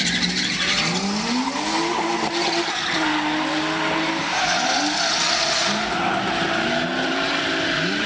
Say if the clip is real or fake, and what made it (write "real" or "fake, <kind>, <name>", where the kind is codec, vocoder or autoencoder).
real